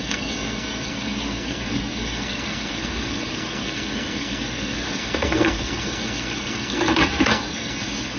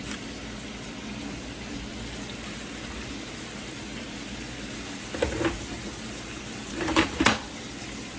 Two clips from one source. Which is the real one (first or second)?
second